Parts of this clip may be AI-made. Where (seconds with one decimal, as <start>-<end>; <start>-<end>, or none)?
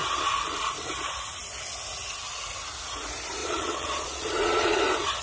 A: 3.4-4.8